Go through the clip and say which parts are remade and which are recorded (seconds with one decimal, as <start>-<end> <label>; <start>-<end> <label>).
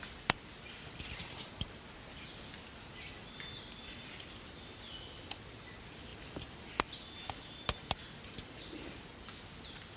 0.0-1.2 recorded; 1.2-2.1 remade; 2.1-10.0 recorded